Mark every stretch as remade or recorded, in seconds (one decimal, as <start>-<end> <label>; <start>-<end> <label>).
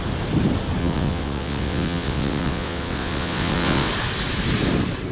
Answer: 0.0-0.8 recorded; 0.8-3.9 remade; 3.9-5.1 recorded